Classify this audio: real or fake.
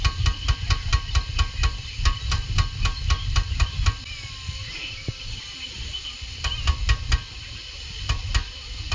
real